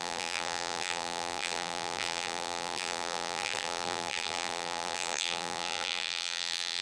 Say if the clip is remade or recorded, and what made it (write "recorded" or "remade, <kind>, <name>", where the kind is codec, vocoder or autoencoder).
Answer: remade, vocoder, BigVGAN v2